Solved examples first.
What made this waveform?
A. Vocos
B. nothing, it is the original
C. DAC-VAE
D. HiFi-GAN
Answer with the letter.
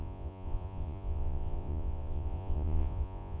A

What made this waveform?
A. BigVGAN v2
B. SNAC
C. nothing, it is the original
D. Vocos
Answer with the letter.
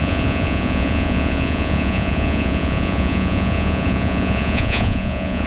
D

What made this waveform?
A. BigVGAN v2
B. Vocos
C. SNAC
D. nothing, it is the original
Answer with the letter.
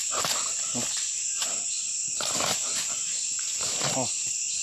D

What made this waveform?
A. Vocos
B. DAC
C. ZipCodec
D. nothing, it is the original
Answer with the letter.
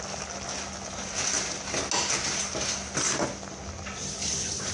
D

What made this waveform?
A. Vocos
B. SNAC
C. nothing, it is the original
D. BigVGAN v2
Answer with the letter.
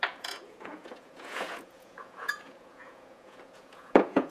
A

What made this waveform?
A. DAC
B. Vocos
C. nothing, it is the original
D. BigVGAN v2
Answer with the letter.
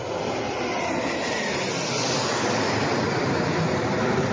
C